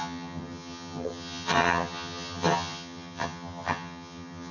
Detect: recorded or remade remade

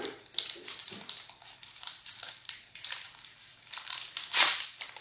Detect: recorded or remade remade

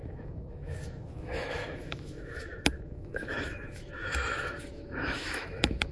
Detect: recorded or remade remade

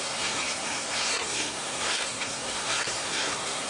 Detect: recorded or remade remade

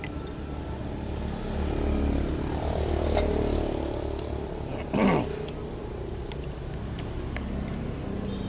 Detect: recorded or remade recorded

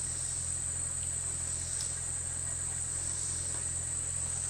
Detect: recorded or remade recorded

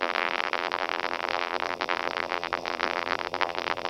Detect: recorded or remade remade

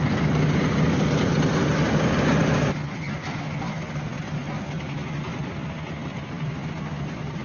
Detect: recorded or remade recorded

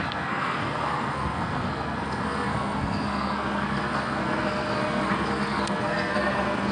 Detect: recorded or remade remade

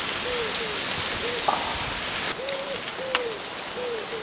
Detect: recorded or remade recorded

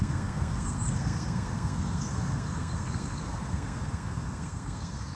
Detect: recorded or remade remade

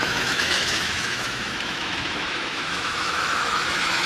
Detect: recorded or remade remade